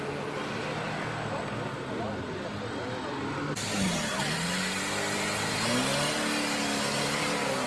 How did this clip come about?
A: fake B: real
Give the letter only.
B